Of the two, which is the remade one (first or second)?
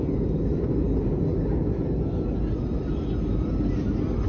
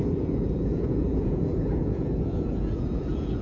second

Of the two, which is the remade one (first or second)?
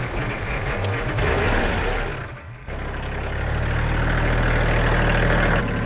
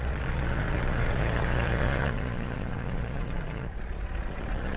second